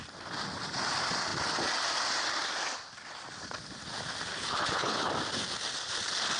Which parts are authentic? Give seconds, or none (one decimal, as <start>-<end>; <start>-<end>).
0.0-4.3; 5.1-6.4

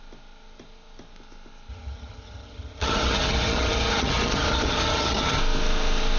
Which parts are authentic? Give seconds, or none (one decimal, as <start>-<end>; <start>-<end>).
0.0-1.7; 5.4-6.2

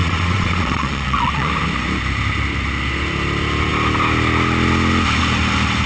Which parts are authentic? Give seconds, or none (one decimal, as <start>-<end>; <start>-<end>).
1.5-5.9

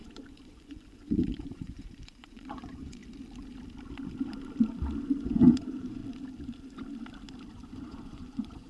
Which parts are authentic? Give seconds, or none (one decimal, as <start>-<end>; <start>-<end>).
3.0-5.2; 6.0-7.5

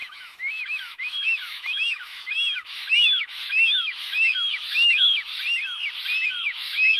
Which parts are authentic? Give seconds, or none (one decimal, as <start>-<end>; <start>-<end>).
5.3-6.3

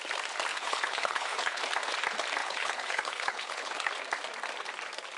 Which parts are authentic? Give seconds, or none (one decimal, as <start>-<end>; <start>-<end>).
0.0-0.5; 1.6-2.4; 3.9-5.2

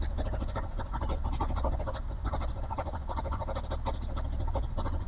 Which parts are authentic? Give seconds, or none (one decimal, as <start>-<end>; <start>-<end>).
3.4-4.4

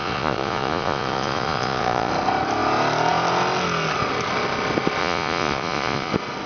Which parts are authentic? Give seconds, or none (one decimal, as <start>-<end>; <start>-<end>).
2.1-5.0; 6.1-6.5